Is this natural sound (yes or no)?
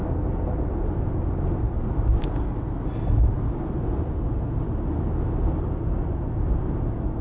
yes